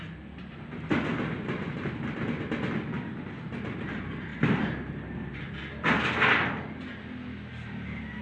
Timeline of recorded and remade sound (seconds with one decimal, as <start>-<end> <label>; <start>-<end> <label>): 0.0-8.2 recorded